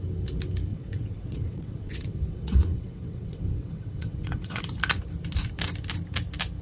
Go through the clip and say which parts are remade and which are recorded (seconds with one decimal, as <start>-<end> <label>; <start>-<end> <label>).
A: 0.0-0.7 recorded; 0.7-4.6 remade; 4.6-6.6 recorded